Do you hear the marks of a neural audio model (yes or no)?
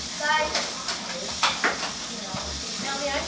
no